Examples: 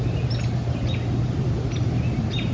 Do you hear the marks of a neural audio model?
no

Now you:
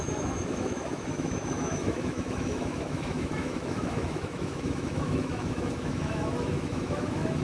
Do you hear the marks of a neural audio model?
yes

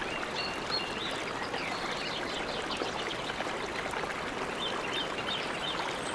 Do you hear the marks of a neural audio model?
no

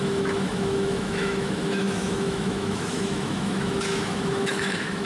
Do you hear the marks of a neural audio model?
yes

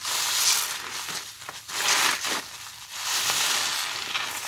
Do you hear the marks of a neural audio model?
no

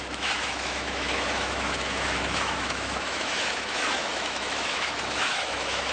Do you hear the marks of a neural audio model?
yes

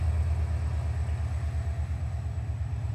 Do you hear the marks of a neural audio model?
no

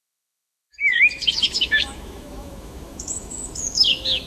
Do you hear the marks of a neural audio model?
yes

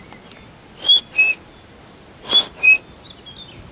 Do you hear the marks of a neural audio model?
no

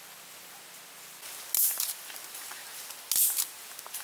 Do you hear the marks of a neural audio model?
no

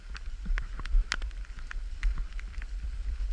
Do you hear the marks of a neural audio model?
no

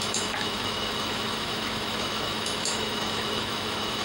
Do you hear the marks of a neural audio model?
yes